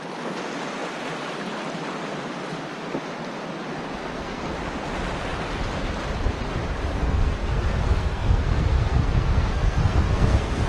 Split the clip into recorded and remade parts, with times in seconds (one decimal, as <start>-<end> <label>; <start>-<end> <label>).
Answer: 0.0-4.0 recorded; 4.0-4.5 remade; 4.5-6.9 recorded; 6.9-10.7 remade